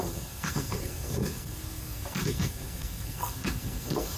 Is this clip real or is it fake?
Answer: fake